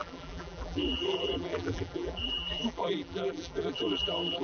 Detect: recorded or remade remade